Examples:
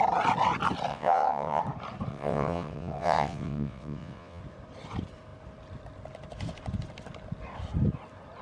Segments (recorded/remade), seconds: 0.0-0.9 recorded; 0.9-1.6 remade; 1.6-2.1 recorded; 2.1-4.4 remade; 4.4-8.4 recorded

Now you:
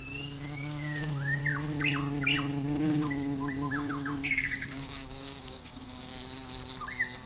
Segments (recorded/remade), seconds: 0.0-1.4 remade; 1.4-2.8 recorded; 2.8-6.1 remade; 6.1-7.3 recorded